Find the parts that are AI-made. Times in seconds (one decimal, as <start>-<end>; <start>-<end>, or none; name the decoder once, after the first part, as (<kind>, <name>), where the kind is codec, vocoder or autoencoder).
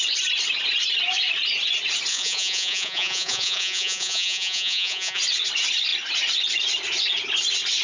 2.1-5.2 (vocoder, Vocos)